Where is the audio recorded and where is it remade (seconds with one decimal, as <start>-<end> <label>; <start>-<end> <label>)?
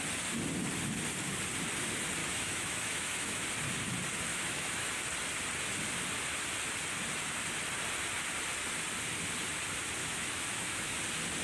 0.0-2.2 recorded; 2.2-3.4 remade; 3.4-4.3 recorded; 4.3-4.9 remade; 4.9-10.0 recorded; 10.0-11.0 remade; 11.0-11.4 recorded